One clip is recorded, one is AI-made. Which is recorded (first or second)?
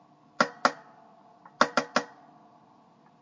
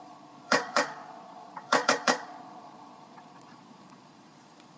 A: first